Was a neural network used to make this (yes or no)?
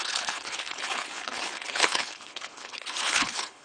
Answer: yes